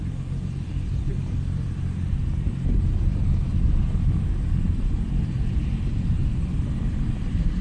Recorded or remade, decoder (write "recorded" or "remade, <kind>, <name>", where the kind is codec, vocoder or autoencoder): remade, vocoder, BigVGAN v2